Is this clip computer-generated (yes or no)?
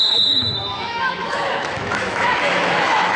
yes